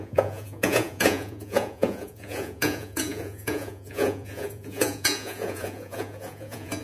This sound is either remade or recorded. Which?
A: remade